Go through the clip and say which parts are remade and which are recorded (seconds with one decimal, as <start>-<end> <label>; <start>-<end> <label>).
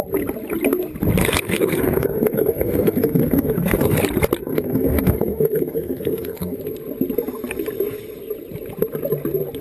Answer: 0.0-1.2 recorded; 1.2-4.0 remade; 4.0-4.4 recorded; 4.4-6.6 remade; 6.6-9.6 recorded